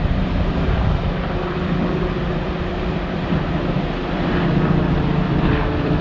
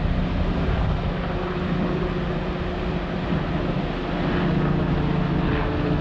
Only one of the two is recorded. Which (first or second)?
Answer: second